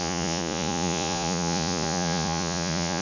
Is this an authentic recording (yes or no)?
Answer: no